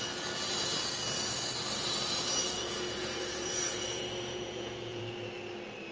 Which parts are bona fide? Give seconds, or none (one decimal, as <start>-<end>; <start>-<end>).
0.0-2.4; 5.0-5.9